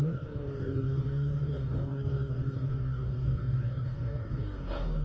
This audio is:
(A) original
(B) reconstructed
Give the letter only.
B